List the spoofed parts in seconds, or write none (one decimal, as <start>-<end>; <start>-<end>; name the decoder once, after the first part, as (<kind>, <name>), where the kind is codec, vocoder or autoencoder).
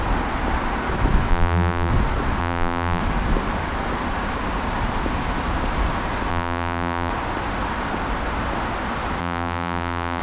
1.3-1.9 (vocoder, BigVGAN v2); 2.4-3.0; 6.3-7.1; 9.2-10.2